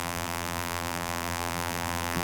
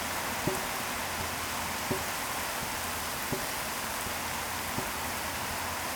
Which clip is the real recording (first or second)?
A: second